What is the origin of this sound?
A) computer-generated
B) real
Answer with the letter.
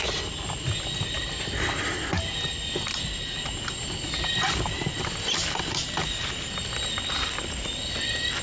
B